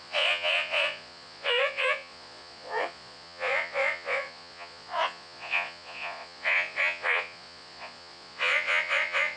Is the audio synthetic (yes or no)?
yes